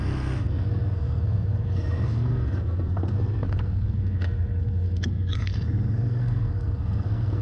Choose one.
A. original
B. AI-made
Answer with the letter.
B